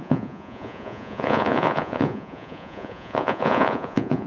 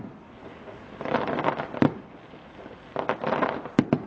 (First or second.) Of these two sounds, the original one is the second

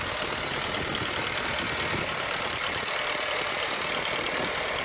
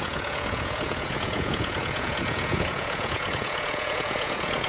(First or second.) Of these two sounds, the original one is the first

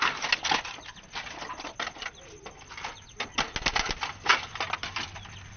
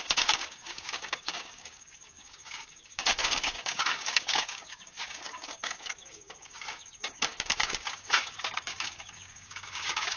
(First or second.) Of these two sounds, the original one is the first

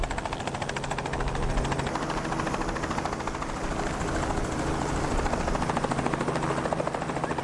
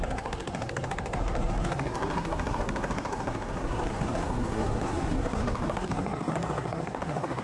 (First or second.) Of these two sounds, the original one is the first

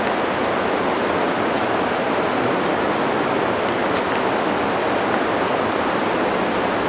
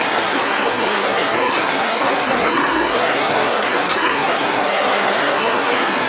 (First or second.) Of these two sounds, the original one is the first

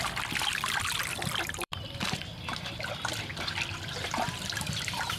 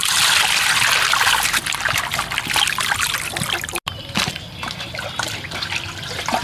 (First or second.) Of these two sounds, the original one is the second